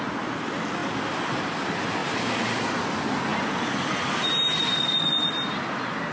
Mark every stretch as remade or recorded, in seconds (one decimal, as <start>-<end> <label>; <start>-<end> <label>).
0.0-2.0 recorded; 2.0-2.8 remade; 2.8-3.3 recorded; 3.3-4.8 remade; 4.8-6.1 recorded